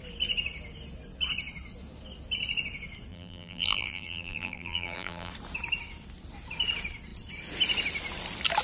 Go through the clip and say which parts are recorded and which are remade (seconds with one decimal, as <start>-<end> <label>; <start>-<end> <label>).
0.0-3.1 recorded; 3.1-5.3 remade; 5.3-8.6 recorded